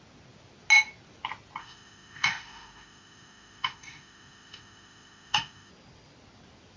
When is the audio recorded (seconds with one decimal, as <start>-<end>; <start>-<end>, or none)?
0.0-1.6; 5.7-6.8